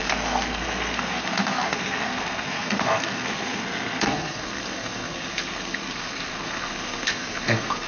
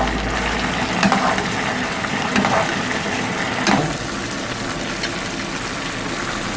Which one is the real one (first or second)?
second